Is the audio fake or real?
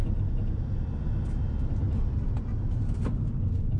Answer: real